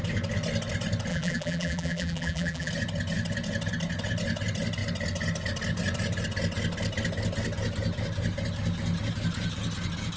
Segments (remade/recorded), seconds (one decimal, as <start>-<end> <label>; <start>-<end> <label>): 0.0-1.1 recorded; 1.1-2.7 remade; 2.7-10.2 recorded